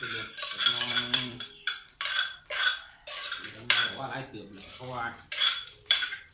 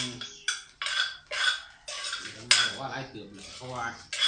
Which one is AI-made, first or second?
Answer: first